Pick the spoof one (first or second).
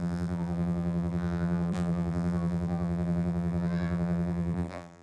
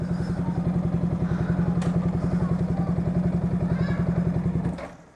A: first